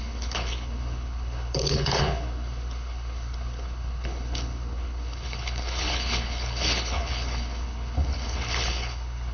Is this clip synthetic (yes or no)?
yes